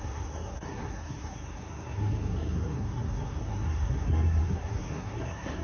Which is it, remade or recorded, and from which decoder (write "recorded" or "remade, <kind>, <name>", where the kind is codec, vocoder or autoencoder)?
remade, codec, SNAC